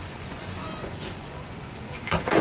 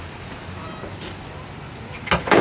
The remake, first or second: first